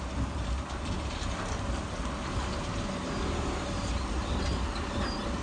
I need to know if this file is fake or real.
real